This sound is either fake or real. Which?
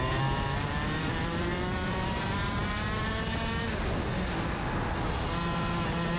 real